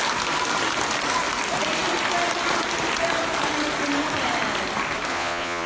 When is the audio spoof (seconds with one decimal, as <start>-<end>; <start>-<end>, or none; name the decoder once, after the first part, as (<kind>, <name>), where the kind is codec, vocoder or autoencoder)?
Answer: 5.1-5.7 (vocoder, Vocos)